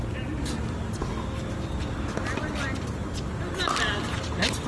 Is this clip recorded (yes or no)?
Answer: yes